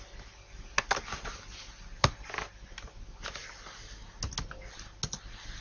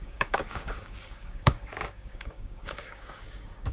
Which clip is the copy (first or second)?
second